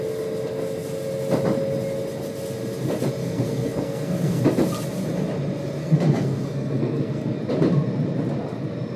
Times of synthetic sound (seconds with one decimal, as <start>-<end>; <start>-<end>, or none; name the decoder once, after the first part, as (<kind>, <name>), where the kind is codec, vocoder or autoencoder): 3.2-4.4 (codec, SNAC); 5.8-7.4